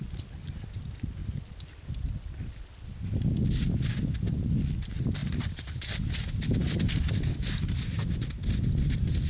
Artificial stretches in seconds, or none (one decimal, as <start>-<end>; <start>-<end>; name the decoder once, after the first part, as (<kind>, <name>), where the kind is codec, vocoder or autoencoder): none